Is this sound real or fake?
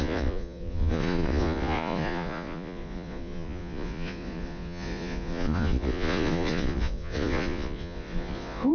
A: fake